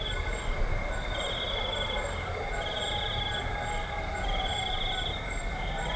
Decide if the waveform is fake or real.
fake